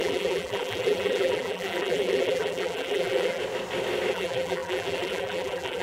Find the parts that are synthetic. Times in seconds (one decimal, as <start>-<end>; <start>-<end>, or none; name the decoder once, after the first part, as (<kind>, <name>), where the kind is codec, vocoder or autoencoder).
0.0-3.4 (vocoder, BigVGAN v2); 4.1-5.8